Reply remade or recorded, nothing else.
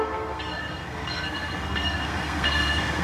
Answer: remade